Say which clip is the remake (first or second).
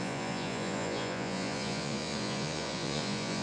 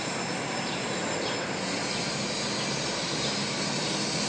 first